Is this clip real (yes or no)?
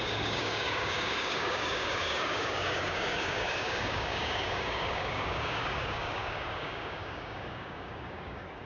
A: no